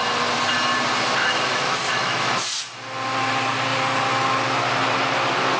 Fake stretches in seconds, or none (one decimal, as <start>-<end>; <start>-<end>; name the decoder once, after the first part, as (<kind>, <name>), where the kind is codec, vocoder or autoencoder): 1.2-2.2 (autoencoder, DAC-VAE)